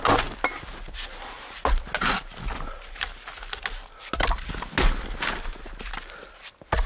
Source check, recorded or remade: recorded